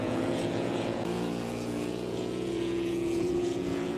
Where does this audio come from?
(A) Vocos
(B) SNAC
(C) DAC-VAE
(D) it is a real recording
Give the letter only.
A